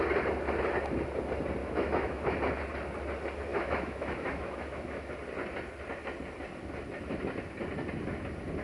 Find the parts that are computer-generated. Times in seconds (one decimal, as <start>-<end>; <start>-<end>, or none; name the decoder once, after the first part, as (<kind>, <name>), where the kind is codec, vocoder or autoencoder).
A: 1.6-2.5 (autoencoder, DAC-VAE); 3.5-5.1